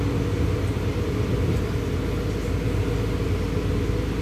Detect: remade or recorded recorded